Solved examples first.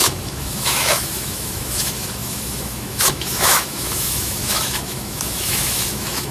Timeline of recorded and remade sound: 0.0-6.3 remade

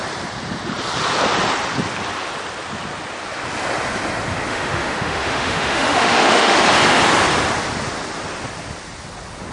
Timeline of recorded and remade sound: 0.0-4.5 recorded; 4.5-6.6 remade; 6.6-9.5 recorded

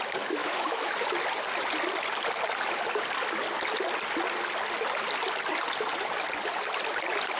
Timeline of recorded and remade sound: 0.0-0.4 recorded; 0.4-1.1 remade; 1.1-7.4 recorded

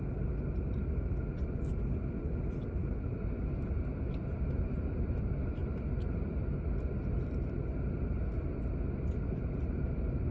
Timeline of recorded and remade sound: 0.0-2.8 recorded; 2.8-3.8 remade; 3.8-10.3 recorded

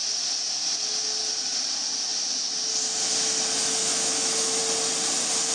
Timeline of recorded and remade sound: 0.0-3.8 recorded; 3.8-4.6 remade; 4.6-5.5 recorded

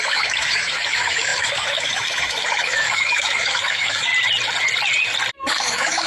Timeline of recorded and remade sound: 0.0-4.1 remade; 4.1-5.3 recorded; 5.3-6.1 remade